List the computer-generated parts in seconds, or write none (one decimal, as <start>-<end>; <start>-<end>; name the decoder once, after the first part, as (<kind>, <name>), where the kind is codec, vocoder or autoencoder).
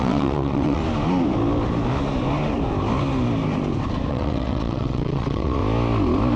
0.0-0.8 (vocoder, WaveNeXt); 4.1-5.6